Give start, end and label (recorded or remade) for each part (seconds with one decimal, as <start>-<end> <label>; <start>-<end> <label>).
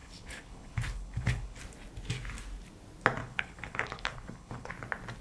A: 0.0-1.6 remade; 1.6-3.2 recorded; 3.2-4.7 remade; 4.7-5.2 recorded